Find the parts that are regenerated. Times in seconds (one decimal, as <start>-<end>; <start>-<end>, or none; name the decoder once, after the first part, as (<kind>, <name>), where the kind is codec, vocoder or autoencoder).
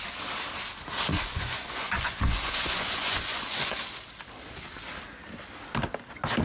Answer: 1.1-3.8 (vocoder, Vocos)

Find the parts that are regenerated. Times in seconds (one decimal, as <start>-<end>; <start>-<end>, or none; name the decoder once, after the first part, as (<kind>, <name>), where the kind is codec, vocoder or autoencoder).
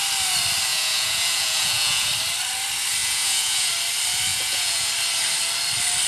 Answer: 0.7-2.1 (vocoder, Vocos); 3.0-3.7; 4.3-4.9